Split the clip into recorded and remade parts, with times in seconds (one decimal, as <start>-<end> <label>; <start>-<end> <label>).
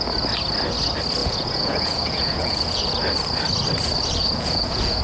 0.0-1.2 recorded; 1.2-2.8 remade; 2.8-4.2 recorded; 4.2-5.0 remade